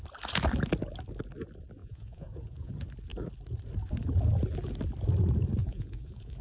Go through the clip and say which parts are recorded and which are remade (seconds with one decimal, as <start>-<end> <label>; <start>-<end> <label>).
0.0-1.8 recorded; 1.8-2.7 remade; 2.7-5.6 recorded; 5.6-6.4 remade